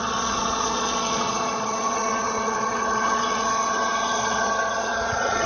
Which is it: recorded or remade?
remade